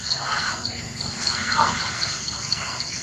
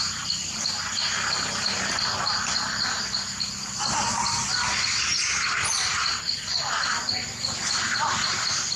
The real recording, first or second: second